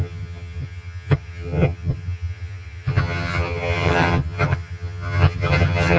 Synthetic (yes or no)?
yes